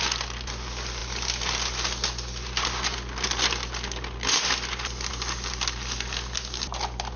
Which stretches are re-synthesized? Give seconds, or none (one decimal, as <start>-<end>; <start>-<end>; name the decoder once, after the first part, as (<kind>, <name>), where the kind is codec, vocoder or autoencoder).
none

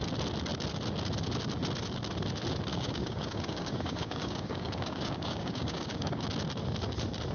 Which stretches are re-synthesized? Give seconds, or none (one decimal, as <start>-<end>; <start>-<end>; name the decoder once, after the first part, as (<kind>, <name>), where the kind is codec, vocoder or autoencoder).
2.7-6.3 (codec, DAC)

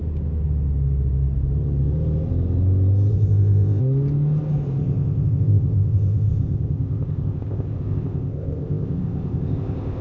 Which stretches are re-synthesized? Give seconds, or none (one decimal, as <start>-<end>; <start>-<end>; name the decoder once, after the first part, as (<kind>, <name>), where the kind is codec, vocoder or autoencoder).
3.1-3.8 (codec, ZipCodec); 4.8-10.0

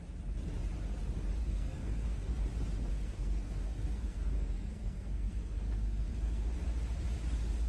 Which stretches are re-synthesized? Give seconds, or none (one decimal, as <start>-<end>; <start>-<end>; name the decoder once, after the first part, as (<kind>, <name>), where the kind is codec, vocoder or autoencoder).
1.4-2.4 (codec, SNAC); 2.9-6.5

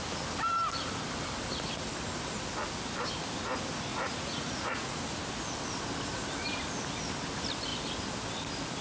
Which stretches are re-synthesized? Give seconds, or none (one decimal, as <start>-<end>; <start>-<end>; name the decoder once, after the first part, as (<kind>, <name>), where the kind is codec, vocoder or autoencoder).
3.9-5.0 (vocoder, Vocos)

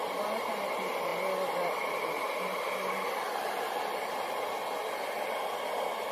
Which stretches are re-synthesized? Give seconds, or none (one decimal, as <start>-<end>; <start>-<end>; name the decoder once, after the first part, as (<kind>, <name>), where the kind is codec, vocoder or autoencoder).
none